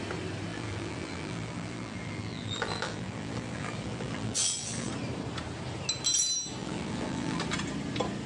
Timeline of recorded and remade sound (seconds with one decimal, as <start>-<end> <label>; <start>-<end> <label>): 0.0-0.5 recorded; 0.5-4.9 remade; 4.9-6.6 recorded; 6.6-7.4 remade; 7.4-8.3 recorded